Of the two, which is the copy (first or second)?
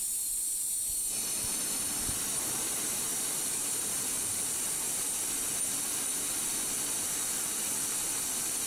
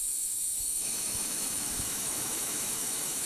second